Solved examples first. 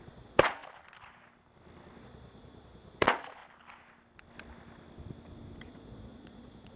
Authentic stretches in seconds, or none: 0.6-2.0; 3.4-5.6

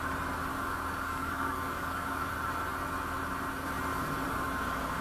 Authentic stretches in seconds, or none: 0.0-0.5; 2.3-5.0

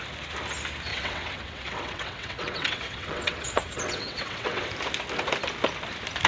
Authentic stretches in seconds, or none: 0.0-0.9; 4.7-6.3

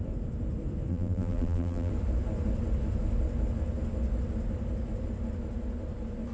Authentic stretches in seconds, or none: 0.0-0.9; 1.9-6.3